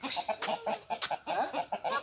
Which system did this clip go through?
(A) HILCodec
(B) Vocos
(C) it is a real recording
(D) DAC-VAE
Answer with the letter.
C